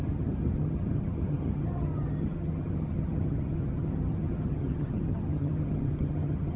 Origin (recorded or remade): remade